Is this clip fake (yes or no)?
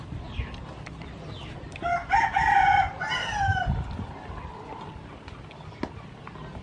no